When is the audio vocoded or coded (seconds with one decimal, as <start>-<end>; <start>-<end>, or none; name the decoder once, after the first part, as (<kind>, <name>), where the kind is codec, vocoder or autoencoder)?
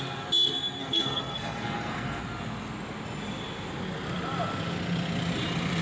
0.8-2.2 (codec, SNAC)